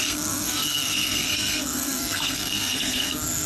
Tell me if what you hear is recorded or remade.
remade